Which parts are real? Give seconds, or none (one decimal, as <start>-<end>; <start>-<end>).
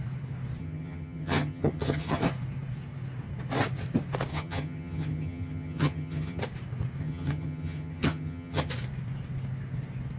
0.0-0.6; 2.2-4.3; 6.4-7.0; 8.7-10.2